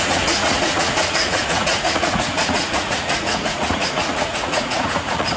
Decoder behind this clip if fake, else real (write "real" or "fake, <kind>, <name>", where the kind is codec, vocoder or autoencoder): fake, vocoder, Vocos